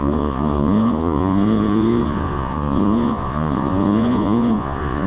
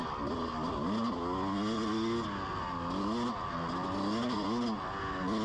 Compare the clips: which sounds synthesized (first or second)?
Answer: first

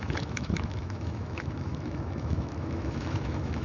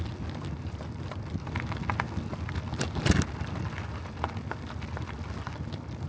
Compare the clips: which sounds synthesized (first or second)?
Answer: first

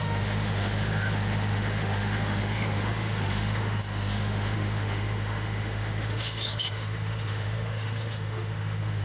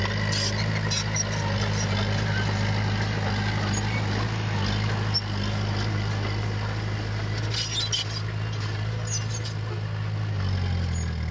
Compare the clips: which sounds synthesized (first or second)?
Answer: first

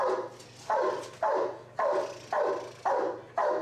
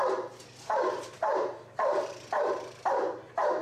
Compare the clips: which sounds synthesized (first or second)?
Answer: second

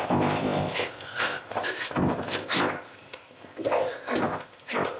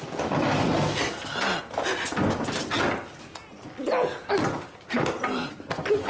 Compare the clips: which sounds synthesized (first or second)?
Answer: first